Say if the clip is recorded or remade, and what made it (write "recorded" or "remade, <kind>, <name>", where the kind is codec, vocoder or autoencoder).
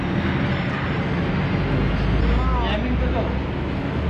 recorded